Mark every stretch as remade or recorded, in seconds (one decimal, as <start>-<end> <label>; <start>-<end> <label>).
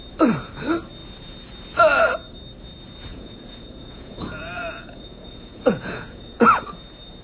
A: 0.0-3.1 recorded; 3.1-6.5 remade; 6.5-7.2 recorded